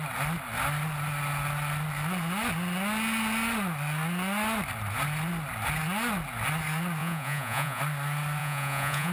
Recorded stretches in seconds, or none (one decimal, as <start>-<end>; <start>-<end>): 0.0-7.0; 7.8-8.4